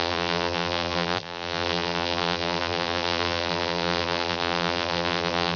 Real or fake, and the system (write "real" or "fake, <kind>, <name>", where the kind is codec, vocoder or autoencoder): fake, vocoder, BigVGAN v2